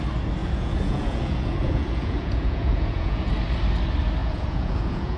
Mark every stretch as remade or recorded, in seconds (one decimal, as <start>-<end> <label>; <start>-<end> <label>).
0.0-0.4 recorded; 0.4-3.3 remade; 3.3-4.2 recorded; 4.2-5.2 remade